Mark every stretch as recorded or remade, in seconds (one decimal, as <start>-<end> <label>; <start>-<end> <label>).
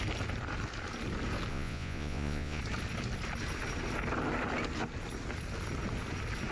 0.0-1.5 recorded; 1.5-2.6 remade; 2.6-6.5 recorded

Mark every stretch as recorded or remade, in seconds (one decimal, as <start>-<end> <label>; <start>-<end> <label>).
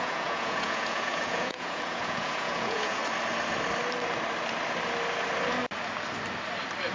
0.0-3.0 remade; 3.0-6.9 recorded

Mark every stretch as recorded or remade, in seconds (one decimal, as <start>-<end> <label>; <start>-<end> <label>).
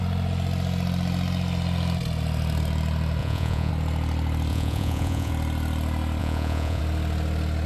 0.0-3.2 recorded; 3.2-3.7 remade; 3.7-4.5 recorded; 4.5-5.3 remade; 5.3-6.2 recorded; 6.2-6.8 remade; 6.8-7.7 recorded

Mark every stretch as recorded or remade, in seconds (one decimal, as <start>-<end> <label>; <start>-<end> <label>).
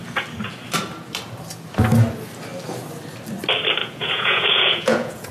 0.0-3.8 recorded; 3.8-5.3 remade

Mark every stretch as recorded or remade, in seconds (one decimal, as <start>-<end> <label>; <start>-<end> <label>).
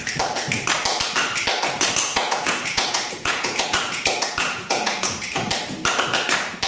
0.0-2.1 recorded; 2.1-5.2 remade; 5.2-6.7 recorded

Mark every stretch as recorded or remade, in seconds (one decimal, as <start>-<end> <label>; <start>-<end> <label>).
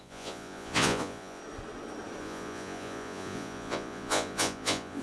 0.0-1.4 remade; 1.4-2.2 recorded; 2.2-5.0 remade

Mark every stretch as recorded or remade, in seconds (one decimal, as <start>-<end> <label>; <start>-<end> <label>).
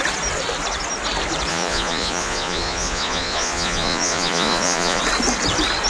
0.0-1.5 recorded; 1.5-5.0 remade; 5.0-5.9 recorded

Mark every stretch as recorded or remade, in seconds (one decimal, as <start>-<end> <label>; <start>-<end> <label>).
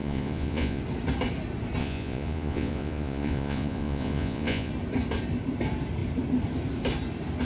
0.0-0.8 remade; 0.8-1.8 recorded; 1.8-4.7 remade; 4.7-7.4 recorded